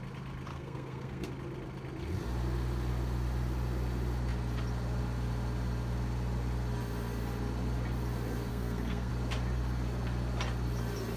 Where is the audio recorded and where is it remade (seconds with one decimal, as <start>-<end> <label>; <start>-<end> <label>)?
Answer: 0.0-0.5 recorded; 0.5-1.3 remade; 1.3-8.5 recorded; 8.5-9.1 remade; 9.1-11.2 recorded